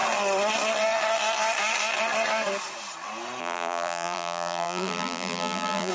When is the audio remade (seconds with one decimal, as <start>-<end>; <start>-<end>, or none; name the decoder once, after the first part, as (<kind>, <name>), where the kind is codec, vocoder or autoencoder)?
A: 3.4-5.9 (vocoder, BigVGAN v2)